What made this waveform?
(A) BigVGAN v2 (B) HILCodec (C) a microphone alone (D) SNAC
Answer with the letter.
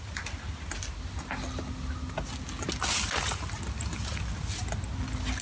C